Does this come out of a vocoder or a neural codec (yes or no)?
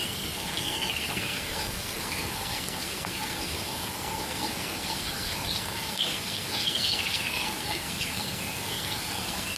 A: yes